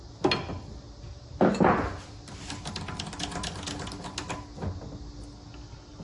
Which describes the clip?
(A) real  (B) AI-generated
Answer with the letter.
A